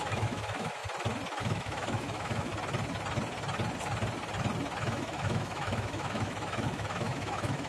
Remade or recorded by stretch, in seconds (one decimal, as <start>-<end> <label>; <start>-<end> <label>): 0.0-0.8 remade; 0.8-1.4 recorded; 1.4-2.5 remade; 2.5-4.8 recorded; 4.8-7.7 remade